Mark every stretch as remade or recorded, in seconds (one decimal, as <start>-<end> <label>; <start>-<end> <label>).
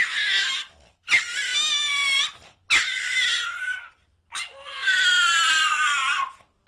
0.0-6.7 recorded